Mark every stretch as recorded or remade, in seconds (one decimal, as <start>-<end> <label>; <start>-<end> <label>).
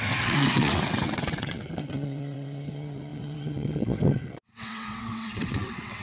0.0-6.0 remade